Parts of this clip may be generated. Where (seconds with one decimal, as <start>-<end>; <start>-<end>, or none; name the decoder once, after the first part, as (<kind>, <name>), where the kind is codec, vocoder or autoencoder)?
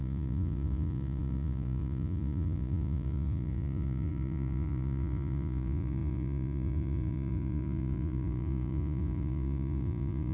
0.0-10.3 (vocoder, Vocos)